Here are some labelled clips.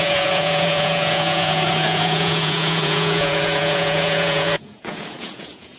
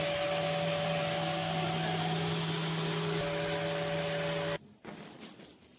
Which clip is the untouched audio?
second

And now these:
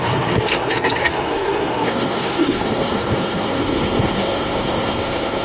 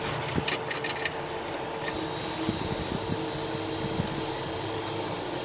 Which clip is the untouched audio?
second